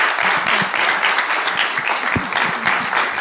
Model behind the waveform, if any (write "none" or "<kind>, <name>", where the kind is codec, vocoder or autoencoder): none